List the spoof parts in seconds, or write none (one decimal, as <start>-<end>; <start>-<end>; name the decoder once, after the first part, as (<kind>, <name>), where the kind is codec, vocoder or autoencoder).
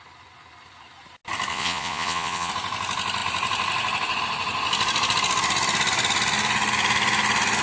1.5-2.5 (vocoder, Vocos)